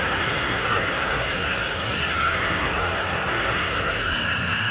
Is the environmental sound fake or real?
fake